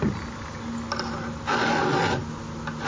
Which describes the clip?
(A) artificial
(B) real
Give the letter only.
B